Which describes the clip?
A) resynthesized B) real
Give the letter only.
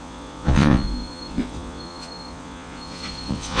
A